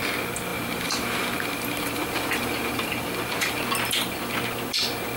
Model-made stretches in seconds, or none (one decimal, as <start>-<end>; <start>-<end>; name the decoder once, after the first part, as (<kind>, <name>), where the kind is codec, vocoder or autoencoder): 0.5-3.6 (vocoder, BigVGAN v2)